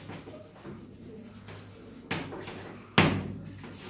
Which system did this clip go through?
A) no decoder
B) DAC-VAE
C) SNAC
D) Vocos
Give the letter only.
A